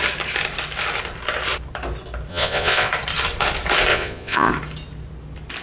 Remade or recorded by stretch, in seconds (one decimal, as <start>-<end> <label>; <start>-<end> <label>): 0.0-2.3 recorded; 2.3-2.9 remade; 2.9-3.9 recorded; 3.9-4.5 remade; 4.5-5.6 recorded